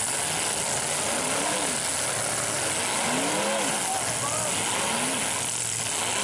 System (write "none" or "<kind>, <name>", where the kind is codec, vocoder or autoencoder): none